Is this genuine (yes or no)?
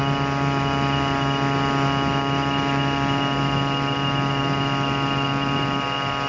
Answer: yes